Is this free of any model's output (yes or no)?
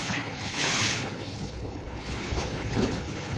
no